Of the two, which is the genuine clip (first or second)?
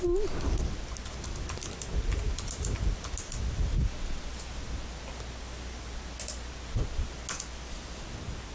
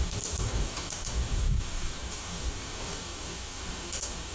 first